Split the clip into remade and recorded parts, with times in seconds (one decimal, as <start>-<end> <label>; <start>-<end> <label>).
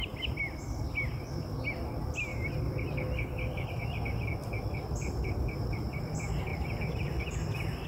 0.0-2.3 recorded; 2.3-3.8 remade; 3.8-4.4 recorded; 4.4-5.9 remade; 5.9-6.5 recorded; 6.5-7.2 remade; 7.2-7.9 recorded